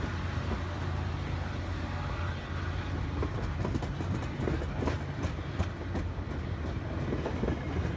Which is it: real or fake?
real